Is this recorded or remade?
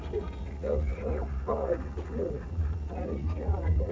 remade